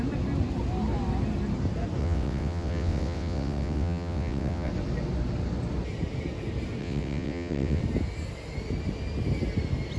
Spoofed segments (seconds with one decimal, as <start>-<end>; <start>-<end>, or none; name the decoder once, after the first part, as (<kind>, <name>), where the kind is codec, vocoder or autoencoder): 2.0-4.7 (vocoder, WaveNeXt); 6.8-7.8